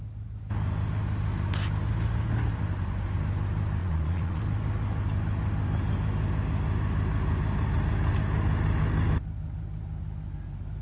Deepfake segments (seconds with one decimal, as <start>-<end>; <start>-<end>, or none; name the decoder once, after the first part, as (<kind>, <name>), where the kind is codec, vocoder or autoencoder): 3.8-4.4 (vocoder, Vocos)